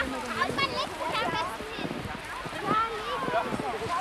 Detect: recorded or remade recorded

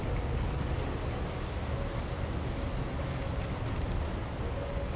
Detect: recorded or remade recorded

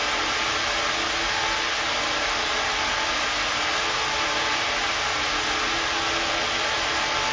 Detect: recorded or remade recorded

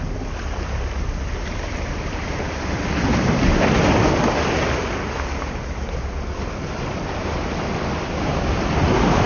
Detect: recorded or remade recorded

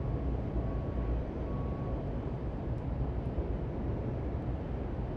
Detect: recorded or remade recorded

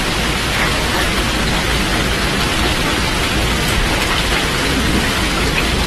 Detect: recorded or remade recorded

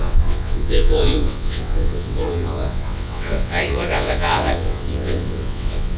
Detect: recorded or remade remade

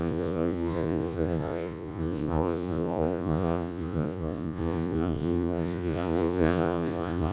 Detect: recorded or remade remade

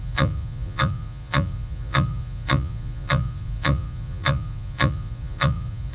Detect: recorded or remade remade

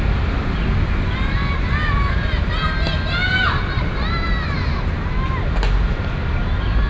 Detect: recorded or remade recorded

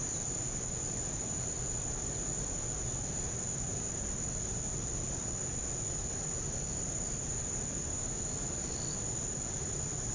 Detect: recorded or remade recorded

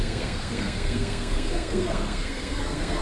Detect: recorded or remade remade